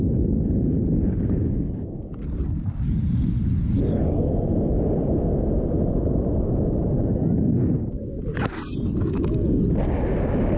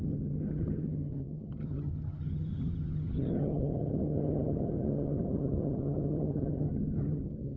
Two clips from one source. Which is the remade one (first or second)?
second